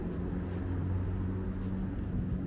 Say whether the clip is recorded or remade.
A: recorded